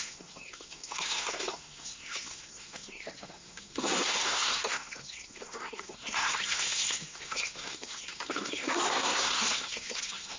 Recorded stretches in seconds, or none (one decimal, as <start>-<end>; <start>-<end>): none